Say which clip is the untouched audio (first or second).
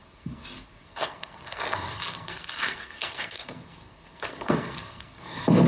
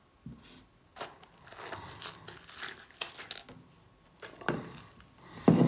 second